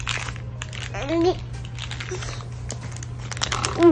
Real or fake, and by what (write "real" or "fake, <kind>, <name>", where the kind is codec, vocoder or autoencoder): real